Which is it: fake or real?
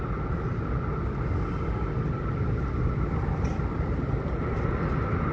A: real